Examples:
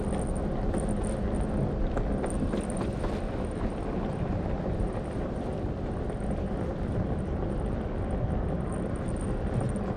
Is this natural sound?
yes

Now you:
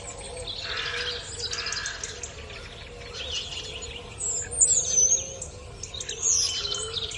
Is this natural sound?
yes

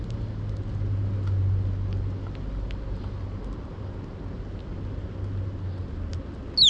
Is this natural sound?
yes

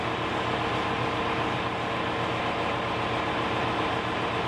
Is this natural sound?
yes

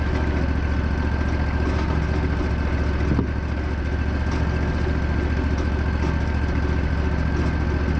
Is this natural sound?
yes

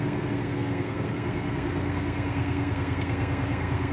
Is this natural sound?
no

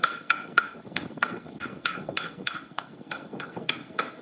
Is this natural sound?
no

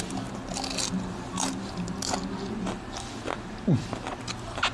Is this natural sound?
yes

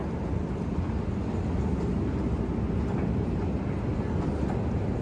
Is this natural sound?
yes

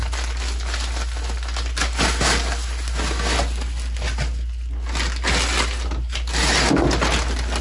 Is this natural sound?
yes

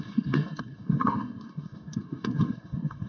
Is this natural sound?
no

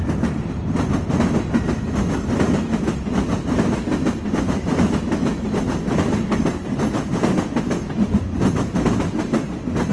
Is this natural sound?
yes